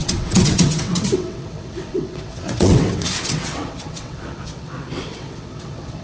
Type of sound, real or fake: fake